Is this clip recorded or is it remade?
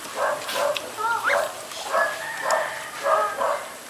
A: recorded